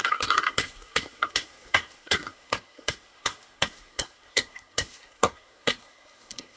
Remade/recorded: remade